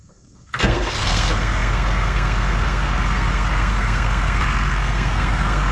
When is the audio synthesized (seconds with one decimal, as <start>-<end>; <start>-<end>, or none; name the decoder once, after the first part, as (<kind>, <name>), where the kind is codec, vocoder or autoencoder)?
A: 0.0-5.7 (codec, SNAC)

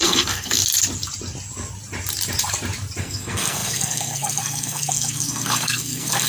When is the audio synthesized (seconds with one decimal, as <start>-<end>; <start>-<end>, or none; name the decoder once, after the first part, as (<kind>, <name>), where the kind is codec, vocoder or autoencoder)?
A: 0.0-0.6 (codec, SNAC); 3.0-6.3

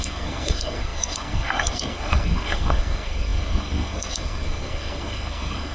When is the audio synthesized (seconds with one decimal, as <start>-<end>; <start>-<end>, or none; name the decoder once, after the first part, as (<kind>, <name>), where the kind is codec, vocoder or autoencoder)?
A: 0.0-5.7 (codec, SNAC)

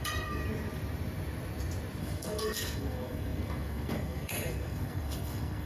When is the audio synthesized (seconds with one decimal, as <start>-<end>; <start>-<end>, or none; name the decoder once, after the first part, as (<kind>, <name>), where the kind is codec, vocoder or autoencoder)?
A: 0.0-0.4 (codec, SNAC); 2.0-5.7